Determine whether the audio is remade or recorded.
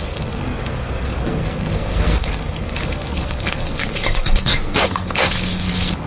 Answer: remade